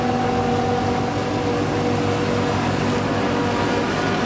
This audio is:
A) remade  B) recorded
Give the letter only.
B